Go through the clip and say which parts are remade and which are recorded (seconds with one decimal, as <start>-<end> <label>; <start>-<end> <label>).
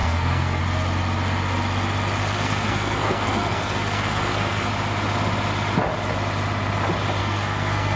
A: 0.0-0.6 remade; 0.6-2.2 recorded; 2.2-4.7 remade; 4.7-7.2 recorded; 7.2-8.0 remade